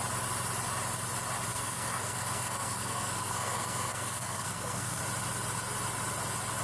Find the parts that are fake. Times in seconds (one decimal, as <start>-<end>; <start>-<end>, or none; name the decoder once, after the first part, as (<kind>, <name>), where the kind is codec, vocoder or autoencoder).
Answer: 1.5-5.0 (codec, SNAC)